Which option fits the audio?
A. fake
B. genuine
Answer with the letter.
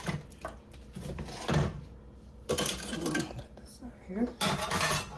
B